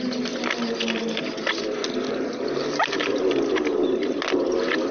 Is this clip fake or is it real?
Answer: real